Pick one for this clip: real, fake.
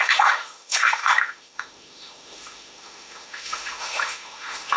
fake